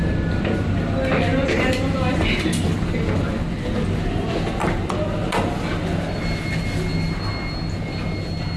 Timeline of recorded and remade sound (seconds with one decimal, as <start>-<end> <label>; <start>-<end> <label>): 0.0-8.6 recorded